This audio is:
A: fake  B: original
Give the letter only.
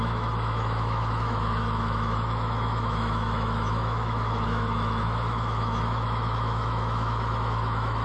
A